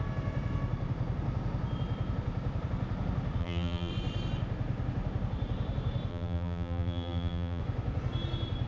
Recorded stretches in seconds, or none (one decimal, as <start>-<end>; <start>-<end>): 0.0-3.4; 3.9-6.1; 7.6-8.7